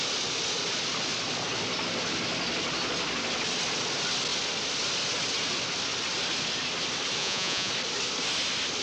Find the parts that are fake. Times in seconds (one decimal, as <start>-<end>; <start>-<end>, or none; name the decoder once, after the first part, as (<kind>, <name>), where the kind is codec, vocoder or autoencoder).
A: 7.2-7.7 (vocoder, Vocos)